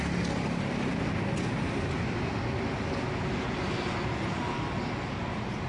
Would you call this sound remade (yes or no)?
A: no